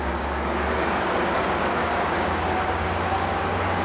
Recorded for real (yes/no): no